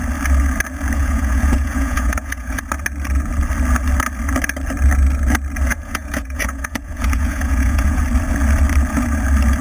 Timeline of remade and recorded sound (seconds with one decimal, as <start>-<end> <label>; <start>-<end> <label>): 0.0-1.0 recorded; 1.0-2.6 remade; 2.6-5.7 recorded; 5.7-8.0 remade; 8.0-9.6 recorded

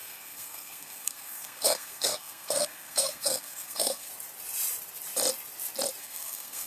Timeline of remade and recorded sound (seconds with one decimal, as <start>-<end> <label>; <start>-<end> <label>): 0.0-4.1 remade; 4.1-6.0 recorded; 6.0-6.7 remade

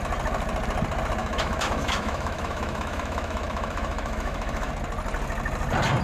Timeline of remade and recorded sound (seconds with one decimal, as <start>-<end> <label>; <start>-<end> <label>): 0.0-1.2 recorded; 1.2-4.7 remade; 4.7-6.0 recorded

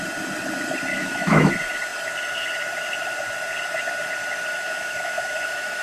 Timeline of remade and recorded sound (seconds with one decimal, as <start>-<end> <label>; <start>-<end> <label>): 0.0-0.9 recorded; 0.9-1.5 remade; 1.5-4.5 recorded; 4.5-5.8 remade